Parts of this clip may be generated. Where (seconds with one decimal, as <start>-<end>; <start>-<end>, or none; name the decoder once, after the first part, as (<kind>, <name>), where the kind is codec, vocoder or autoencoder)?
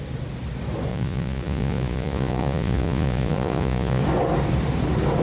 0.9-4.0 (vocoder, Vocos)